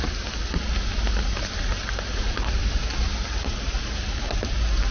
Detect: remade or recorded recorded